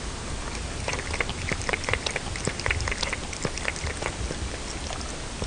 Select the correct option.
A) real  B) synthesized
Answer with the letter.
A